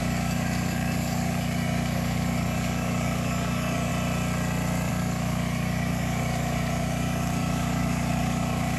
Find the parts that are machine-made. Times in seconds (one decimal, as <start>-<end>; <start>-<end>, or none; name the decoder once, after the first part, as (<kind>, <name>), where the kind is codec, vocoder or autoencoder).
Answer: 0.0-3.9 (codec, DAC); 4.9-8.8